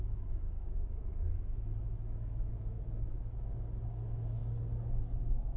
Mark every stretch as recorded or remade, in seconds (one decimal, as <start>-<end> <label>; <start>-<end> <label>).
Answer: 0.0-4.4 remade; 4.4-5.6 recorded